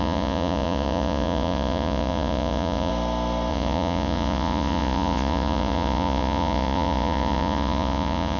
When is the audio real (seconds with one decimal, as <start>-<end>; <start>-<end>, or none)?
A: 2.9-3.5